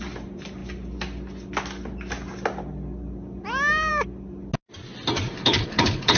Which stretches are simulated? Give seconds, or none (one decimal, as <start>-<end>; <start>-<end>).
5.4-6.2